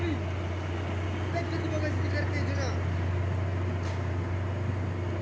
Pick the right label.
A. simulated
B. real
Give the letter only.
B